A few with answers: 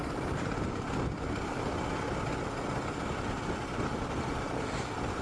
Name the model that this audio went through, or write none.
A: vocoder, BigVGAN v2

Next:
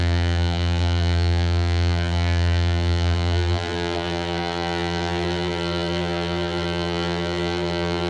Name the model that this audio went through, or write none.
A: vocoder, BigVGAN v2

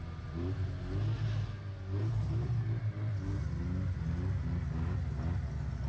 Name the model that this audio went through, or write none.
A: none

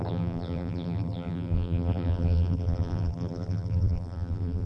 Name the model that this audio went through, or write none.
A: vocoder, BigVGAN v2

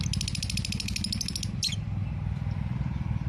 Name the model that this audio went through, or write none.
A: none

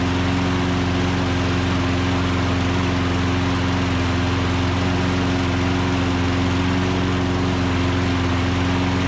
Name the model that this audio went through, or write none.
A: none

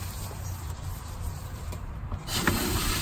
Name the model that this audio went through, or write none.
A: vocoder, BigVGAN v2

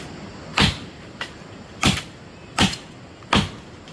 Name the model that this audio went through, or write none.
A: none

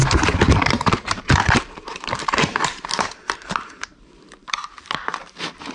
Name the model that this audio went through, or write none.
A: vocoder, BigVGAN v2